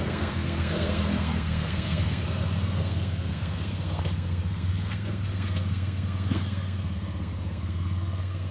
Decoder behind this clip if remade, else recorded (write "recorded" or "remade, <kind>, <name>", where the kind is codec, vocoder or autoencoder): remade, codec, SNAC